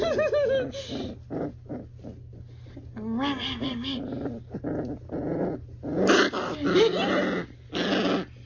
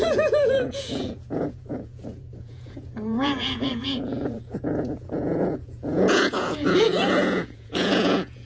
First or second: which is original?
first